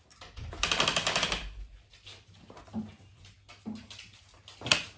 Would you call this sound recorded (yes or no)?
yes